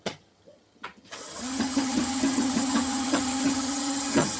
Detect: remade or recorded remade